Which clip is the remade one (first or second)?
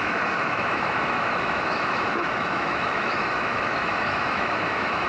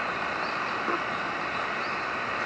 first